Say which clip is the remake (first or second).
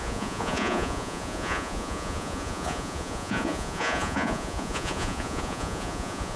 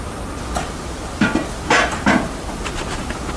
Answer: first